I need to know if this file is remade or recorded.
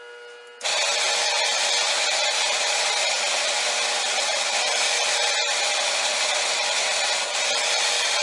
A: recorded